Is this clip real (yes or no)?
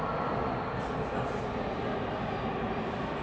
yes